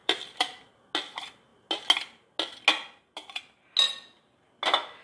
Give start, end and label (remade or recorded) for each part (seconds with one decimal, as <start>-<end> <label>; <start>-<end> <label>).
0.0-0.6 remade; 0.6-5.0 recorded